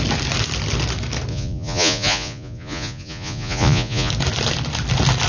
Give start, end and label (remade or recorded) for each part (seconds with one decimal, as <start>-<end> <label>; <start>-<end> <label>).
0.0-1.3 recorded; 1.3-4.1 remade; 4.1-5.3 recorded